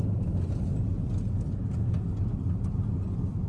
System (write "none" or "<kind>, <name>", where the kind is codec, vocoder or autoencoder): none